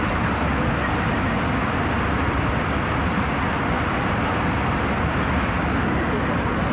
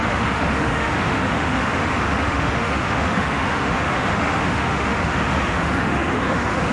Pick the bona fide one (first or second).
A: first